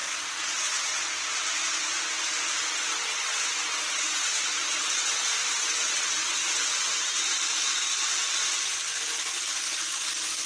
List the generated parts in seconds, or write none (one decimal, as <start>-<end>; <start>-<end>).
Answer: 0.0-1.0; 2.6-6.9